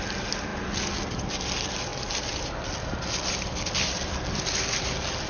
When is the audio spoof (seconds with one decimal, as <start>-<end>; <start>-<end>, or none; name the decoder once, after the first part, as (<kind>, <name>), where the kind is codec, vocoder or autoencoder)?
none